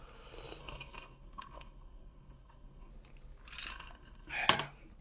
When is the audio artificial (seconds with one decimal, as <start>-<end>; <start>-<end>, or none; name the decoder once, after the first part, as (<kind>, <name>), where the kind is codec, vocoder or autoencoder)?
0.6-2.9 (codec, SNAC); 3.7-4.3